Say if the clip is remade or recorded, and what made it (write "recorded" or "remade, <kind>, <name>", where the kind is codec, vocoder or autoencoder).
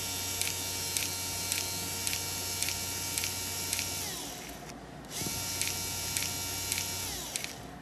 recorded